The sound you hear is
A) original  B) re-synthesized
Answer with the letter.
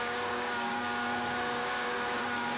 B